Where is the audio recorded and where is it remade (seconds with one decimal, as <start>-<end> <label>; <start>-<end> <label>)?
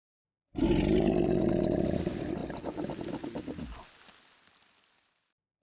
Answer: 0.0-5.6 recorded